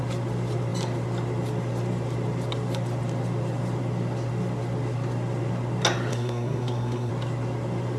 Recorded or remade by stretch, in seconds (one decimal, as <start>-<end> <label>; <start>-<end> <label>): 0.0-6.1 recorded; 6.1-7.1 remade; 7.1-8.0 recorded